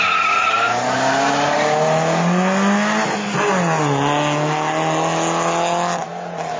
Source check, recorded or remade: recorded